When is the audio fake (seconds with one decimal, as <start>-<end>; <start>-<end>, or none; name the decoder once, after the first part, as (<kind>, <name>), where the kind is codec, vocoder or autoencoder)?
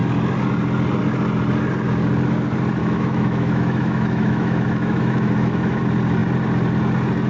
2.8-5.8 (autoencoder, DAC-VAE)